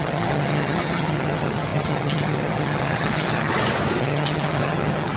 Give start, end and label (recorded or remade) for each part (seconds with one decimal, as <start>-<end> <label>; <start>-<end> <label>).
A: 0.0-3.5 remade; 3.5-4.0 recorded; 4.0-5.2 remade